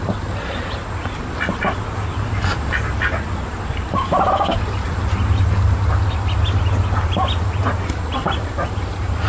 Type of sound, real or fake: real